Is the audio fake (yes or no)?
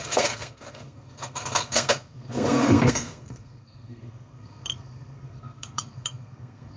yes